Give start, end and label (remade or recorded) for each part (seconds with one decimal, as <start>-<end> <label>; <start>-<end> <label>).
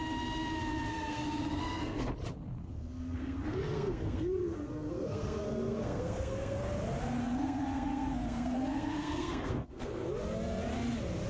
0.0-0.9 recorded; 0.9-2.1 remade; 2.1-2.6 recorded; 2.6-6.6 remade; 6.6-7.2 recorded; 7.2-10.1 remade; 10.1-11.3 recorded